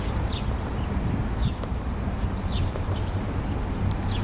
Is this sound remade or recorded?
remade